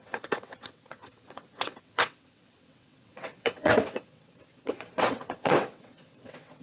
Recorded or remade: remade